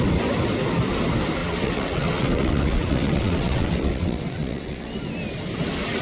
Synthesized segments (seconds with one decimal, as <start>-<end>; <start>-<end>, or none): 1.4-5.0